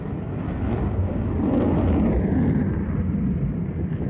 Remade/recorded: remade